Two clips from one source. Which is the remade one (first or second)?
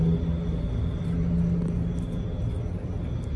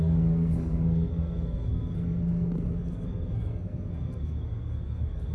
second